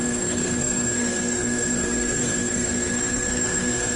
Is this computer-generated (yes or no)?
yes